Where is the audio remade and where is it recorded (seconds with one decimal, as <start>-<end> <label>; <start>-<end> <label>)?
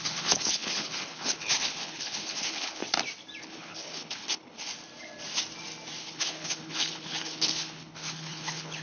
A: 0.0-2.8 remade; 2.8-3.4 recorded; 3.4-4.7 remade; 4.7-6.0 recorded; 6.0-8.8 remade